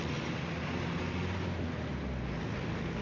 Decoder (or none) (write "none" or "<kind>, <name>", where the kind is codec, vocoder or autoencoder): none